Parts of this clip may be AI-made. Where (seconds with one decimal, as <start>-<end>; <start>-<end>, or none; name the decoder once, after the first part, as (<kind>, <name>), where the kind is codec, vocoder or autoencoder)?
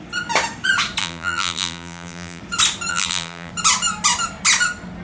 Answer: 1.0-2.4 (vocoder, BigVGAN v2); 2.9-3.5